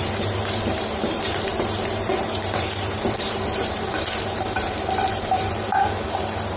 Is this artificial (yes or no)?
yes